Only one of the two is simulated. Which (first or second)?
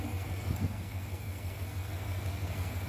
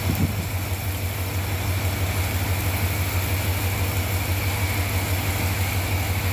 first